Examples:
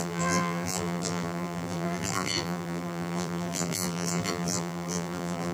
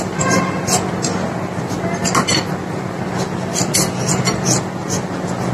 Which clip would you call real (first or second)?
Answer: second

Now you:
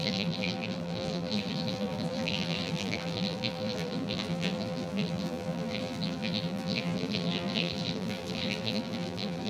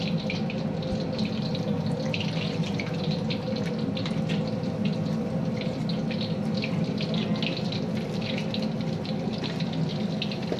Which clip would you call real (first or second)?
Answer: second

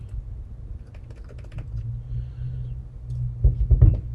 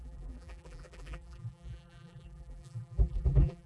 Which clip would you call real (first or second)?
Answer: first